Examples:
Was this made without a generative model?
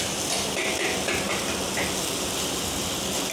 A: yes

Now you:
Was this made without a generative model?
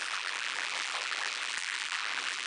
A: no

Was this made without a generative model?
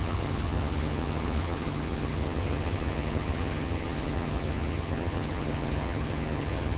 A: no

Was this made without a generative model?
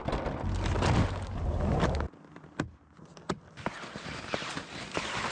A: yes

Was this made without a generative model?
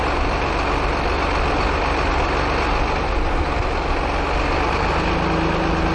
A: yes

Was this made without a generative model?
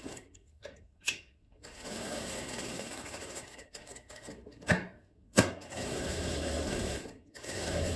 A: no